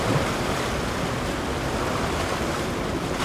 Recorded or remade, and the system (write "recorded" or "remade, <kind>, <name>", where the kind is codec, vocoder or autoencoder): remade, vocoder, BigVGAN v2